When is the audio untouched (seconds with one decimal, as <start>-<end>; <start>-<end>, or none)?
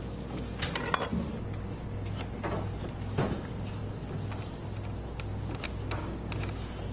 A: 0.0-6.9